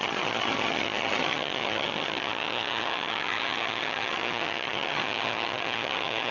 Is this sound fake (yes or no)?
yes